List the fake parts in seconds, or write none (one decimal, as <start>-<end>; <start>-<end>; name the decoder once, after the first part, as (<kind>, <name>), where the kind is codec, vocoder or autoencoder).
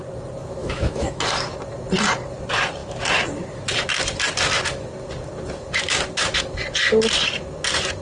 0.6-1.2 (autoencoder, DAC-VAE)